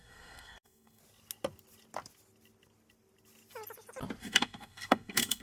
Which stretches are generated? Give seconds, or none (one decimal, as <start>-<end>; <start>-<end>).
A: 0.0-1.0; 4.2-5.4